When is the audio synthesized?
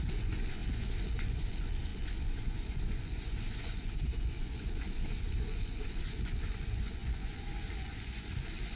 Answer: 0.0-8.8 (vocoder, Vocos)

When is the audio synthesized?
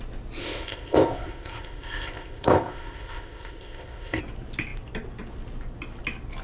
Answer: 0.4-4.2 (codec, ZipCodec)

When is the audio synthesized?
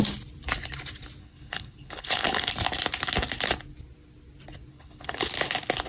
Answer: 1.2-2.5 (codec, HILCodec); 4.7-5.3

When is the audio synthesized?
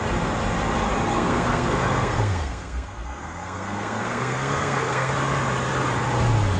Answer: 1.1-5.1 (codec, SNAC)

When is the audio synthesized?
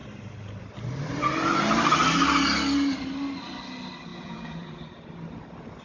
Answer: 4.1-4.8 (vocoder, Vocos)